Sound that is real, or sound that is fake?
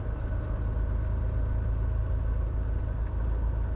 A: real